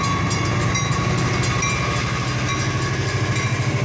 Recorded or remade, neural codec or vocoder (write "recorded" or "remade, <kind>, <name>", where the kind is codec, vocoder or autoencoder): recorded